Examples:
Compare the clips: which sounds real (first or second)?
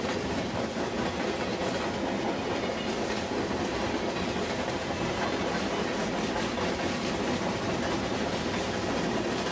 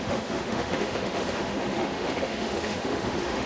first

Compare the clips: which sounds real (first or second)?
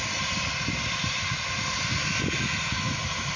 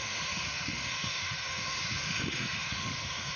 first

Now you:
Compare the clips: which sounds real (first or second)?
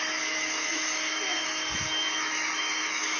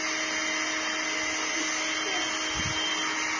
second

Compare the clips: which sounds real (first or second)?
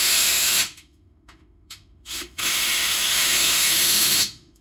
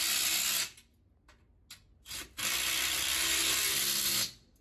second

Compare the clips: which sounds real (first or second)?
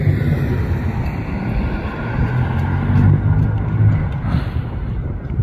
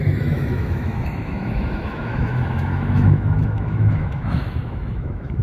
first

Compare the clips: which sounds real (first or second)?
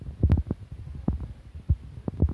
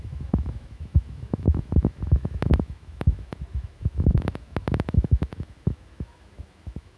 first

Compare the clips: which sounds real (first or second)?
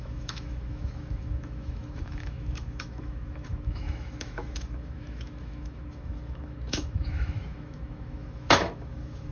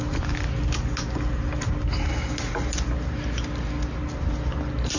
second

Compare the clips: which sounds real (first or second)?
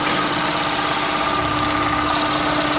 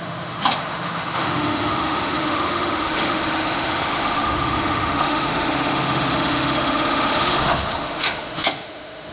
first